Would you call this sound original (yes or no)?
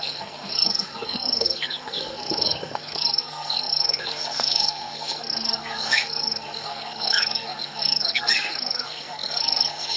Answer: no